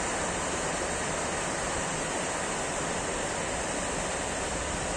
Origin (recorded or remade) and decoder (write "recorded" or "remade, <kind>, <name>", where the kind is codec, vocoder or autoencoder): recorded